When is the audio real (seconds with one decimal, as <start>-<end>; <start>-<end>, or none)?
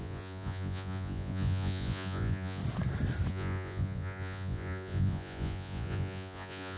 2.6-3.3